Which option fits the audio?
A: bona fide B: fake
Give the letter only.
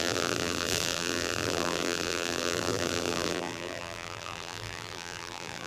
B